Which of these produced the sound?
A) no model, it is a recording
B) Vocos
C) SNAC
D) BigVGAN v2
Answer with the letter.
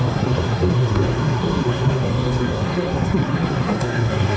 C